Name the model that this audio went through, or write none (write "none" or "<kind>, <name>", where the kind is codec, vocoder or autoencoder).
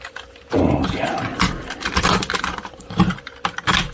vocoder, BigVGAN v2